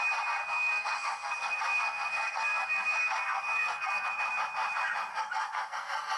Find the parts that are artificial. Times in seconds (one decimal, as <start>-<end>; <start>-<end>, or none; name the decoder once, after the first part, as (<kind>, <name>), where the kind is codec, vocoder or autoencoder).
0.4-4.1 (codec, SNAC); 5.1-6.2